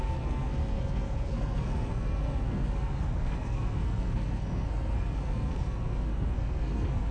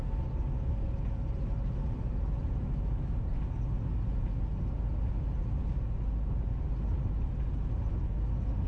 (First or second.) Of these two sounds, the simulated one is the first